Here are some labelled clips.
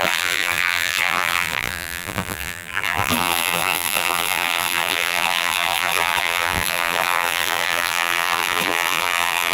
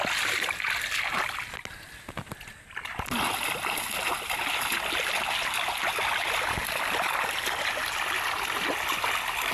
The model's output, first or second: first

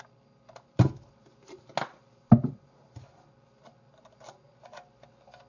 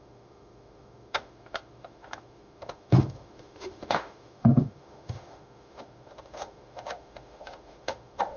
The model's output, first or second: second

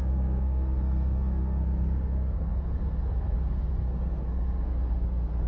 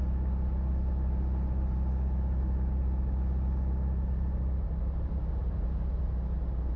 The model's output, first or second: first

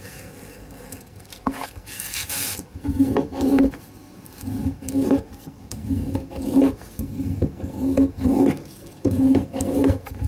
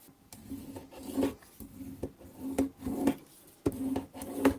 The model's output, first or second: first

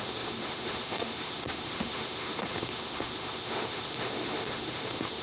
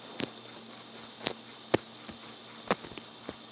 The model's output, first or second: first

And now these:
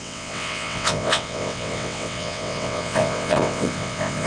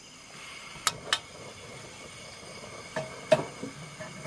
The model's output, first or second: first